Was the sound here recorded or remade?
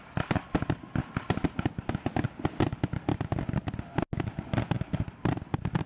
recorded